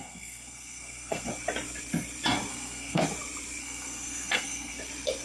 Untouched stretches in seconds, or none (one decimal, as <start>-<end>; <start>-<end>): 1.3-2.5; 3.0-3.6; 4.8-5.2